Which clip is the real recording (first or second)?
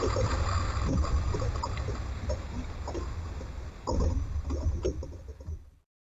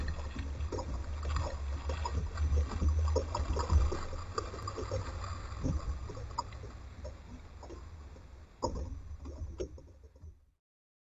second